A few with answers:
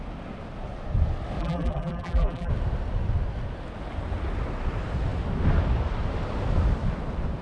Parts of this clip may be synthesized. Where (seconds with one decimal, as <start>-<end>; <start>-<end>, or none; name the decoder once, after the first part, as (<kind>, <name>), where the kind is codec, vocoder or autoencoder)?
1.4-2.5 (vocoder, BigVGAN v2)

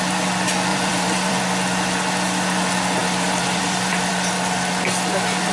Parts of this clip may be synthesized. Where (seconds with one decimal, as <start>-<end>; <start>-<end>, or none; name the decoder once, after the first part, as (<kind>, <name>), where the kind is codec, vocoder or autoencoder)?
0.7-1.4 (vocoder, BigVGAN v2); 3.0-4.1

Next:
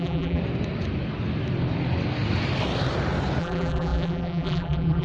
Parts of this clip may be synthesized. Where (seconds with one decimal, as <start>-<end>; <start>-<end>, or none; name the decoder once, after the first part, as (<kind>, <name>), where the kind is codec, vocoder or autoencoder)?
0.0-0.4 (vocoder, BigVGAN v2); 3.4-5.0